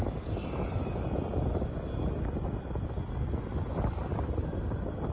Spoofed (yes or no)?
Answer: no